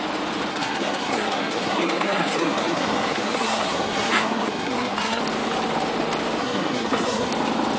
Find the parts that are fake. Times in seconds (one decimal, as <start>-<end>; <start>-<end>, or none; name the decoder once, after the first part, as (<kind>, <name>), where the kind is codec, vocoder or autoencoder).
0.5-5.2 (codec, SNAC); 6.4-7.3